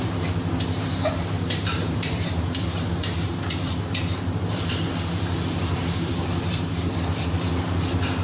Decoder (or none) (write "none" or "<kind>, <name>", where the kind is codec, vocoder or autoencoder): vocoder, BigVGAN v2